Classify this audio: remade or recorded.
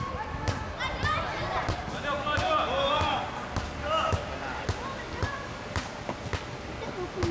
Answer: recorded